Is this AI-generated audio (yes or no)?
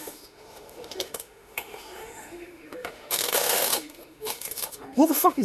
yes